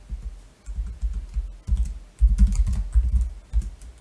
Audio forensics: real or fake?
real